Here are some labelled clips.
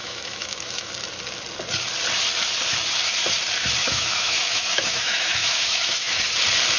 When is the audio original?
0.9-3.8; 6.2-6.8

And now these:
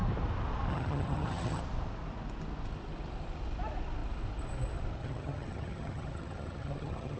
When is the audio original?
0.0-0.7; 1.6-5.0

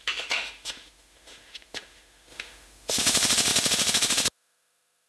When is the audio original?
none

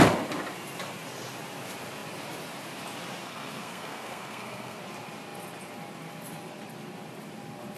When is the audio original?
0.0-3.2; 4.8-7.8

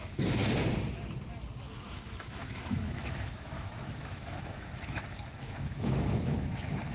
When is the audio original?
0.4-1.6